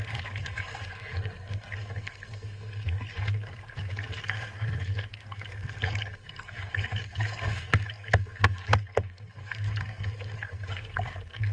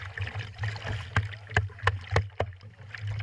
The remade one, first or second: first